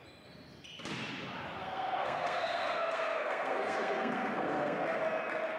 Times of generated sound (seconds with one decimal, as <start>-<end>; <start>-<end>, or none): 1.6-5.0